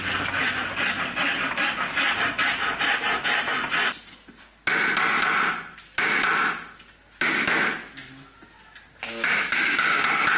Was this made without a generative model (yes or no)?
yes